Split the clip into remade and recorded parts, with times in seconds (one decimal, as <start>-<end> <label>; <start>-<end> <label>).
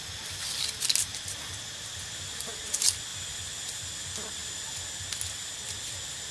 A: 0.0-6.3 recorded